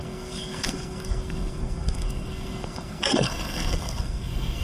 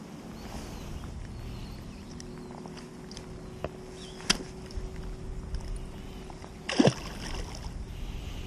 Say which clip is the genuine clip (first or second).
second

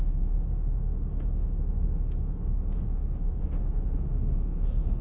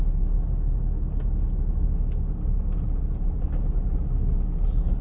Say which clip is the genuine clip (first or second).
second